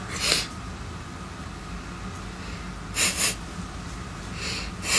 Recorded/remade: recorded